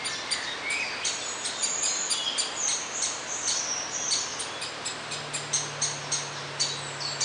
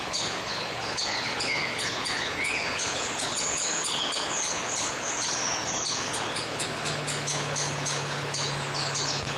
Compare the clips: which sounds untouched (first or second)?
first